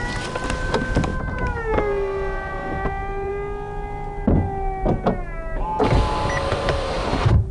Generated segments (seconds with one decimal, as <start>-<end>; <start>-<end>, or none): 1.1-3.3; 6.5-7.5